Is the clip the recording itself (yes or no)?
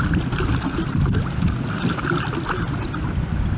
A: yes